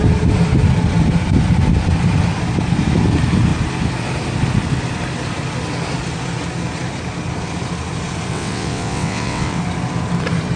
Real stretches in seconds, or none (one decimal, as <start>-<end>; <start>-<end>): 0.0-8.3; 9.6-10.6